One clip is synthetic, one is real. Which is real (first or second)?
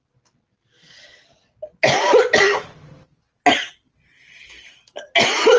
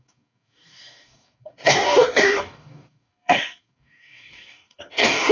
first